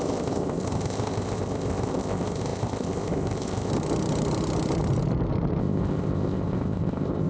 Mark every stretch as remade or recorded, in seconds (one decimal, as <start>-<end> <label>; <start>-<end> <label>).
0.0-3.7 remade; 3.7-5.6 recorded; 5.6-7.3 remade